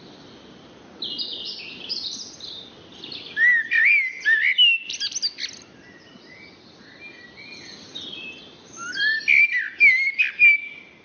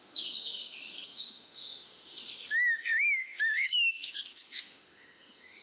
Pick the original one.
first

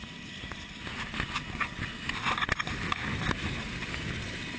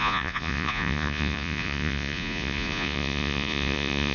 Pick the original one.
first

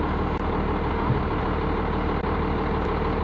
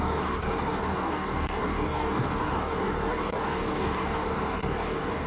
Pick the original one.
first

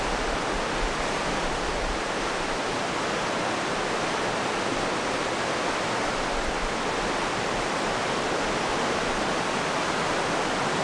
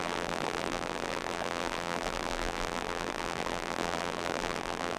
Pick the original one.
first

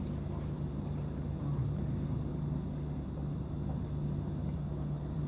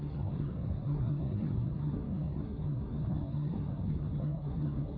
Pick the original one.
first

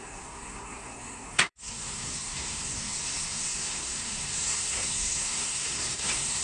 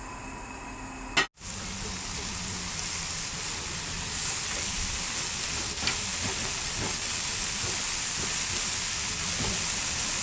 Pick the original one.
second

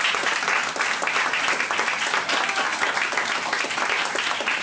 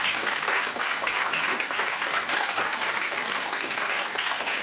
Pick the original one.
first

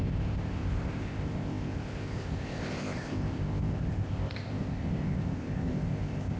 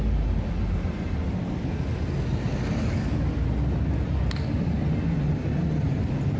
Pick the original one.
second